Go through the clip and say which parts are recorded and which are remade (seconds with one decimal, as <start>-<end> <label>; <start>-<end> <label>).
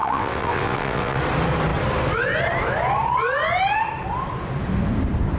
0.0-1.2 remade; 1.2-5.4 recorded